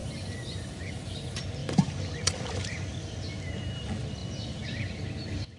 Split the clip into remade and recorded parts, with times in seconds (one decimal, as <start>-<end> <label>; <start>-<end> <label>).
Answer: 0.0-1.0 remade; 1.0-1.6 recorded; 1.6-3.5 remade; 3.5-4.2 recorded; 4.2-5.0 remade; 5.0-5.6 recorded

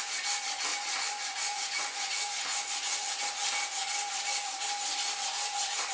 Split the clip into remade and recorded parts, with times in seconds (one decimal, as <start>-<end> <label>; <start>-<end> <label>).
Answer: 0.0-0.7 recorded; 0.7-3.2 remade; 3.2-5.9 recorded

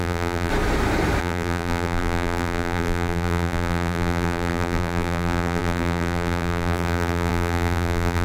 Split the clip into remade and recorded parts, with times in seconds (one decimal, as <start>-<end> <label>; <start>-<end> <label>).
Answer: 0.0-0.5 remade; 0.5-1.2 recorded; 1.2-8.2 remade

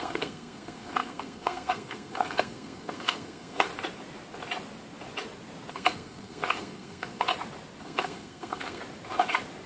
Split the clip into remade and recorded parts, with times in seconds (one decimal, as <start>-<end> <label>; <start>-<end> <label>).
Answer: 0.0-3.7 remade; 3.7-5.7 recorded; 5.7-7.3 remade; 7.3-7.8 recorded; 7.8-8.8 remade; 8.8-9.7 recorded